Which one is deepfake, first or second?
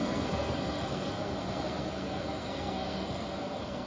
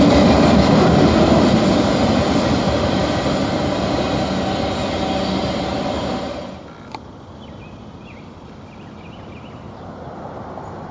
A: first